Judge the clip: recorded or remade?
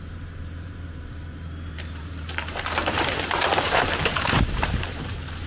remade